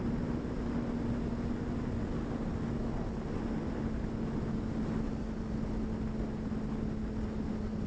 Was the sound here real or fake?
real